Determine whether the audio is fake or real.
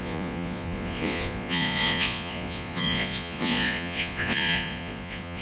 fake